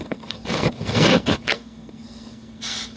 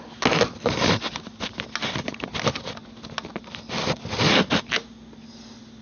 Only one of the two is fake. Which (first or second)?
first